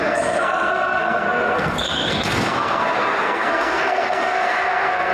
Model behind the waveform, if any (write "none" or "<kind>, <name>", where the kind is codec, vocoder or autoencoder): codec, SNAC